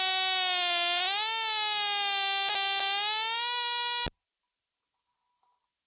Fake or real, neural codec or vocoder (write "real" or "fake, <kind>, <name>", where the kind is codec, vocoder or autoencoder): real